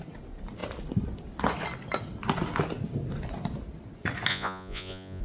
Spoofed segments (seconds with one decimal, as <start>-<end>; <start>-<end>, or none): 4.3-5.2